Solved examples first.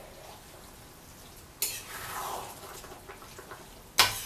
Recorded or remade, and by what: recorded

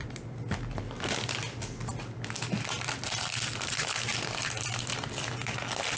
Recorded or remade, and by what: recorded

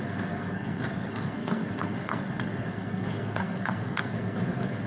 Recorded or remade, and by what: remade, codec, SNAC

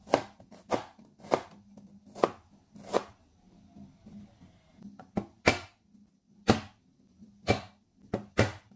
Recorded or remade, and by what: recorded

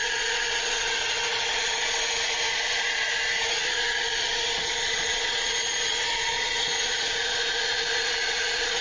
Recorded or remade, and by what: remade, vocoder, Vocos